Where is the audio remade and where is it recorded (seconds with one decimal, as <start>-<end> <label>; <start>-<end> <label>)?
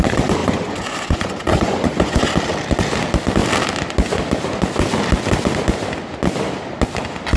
0.0-0.4 recorded; 0.4-2.3 remade; 2.3-7.4 recorded